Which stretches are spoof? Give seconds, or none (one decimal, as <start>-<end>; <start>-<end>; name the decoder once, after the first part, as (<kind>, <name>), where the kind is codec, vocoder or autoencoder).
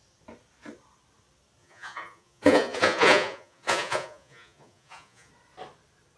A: 1.6-5.3 (vocoder, Vocos)